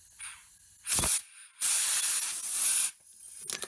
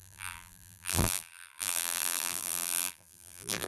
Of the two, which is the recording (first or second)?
first